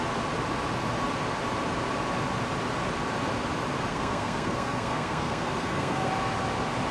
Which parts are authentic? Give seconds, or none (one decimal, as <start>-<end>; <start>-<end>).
0.0-3.9; 6.1-6.9